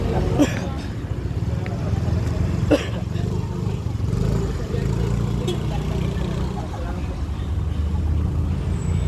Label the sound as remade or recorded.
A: recorded